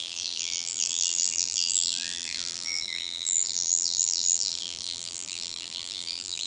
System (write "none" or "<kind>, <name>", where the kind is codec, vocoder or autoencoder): vocoder, BigVGAN v2